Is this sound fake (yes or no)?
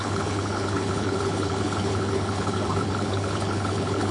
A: yes